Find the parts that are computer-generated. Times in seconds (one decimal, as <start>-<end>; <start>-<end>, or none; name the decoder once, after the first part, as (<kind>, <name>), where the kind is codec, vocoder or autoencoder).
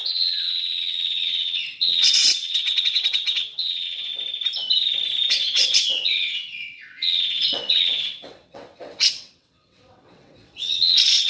0.0-4.1 (vocoder, WaveNeXt); 5.3-11.3